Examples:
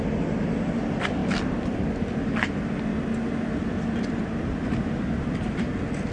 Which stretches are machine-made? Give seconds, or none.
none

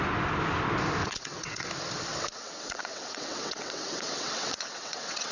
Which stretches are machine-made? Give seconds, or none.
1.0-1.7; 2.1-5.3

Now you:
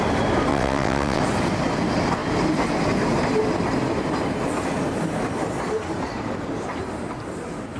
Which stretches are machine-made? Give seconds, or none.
0.5-1.2